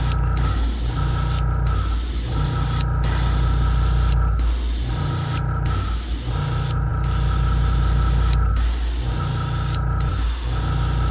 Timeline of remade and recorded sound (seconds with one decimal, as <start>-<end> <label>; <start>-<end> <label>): 0.0-11.1 recorded